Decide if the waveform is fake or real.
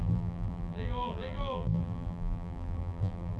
fake